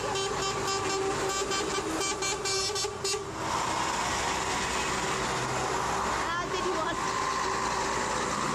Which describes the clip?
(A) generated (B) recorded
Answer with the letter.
B